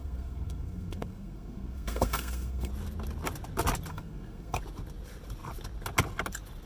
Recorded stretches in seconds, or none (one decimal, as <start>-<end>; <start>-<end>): 2.7-3.9; 4.6-6.7